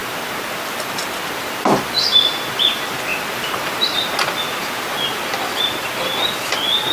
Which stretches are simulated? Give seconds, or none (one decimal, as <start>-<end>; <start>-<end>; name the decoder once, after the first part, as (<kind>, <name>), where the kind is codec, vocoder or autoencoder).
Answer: 3.1-4.2 (vocoder, BigVGAN v2)

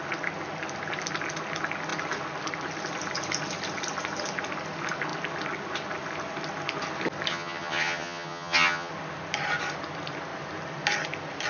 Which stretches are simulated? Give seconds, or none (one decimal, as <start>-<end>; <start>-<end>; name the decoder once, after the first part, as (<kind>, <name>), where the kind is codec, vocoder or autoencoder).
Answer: 7.3-8.9 (vocoder, HiFi-GAN)

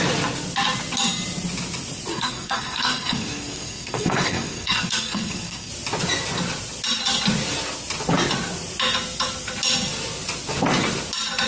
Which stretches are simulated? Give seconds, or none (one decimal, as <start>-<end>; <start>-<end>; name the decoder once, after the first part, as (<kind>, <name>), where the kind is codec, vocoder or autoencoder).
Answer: 2.1-5.7 (codec, SNAC)